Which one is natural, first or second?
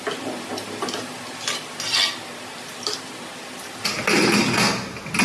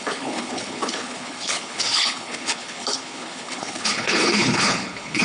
first